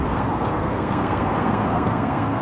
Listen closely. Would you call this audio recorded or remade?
remade